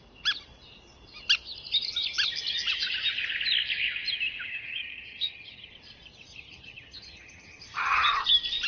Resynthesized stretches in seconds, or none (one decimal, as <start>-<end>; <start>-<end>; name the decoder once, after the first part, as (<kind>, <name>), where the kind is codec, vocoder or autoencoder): 4.5-5.7 (vocoder, HiFi-GAN); 6.3-8.1